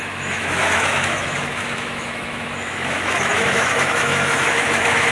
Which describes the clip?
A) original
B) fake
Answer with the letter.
B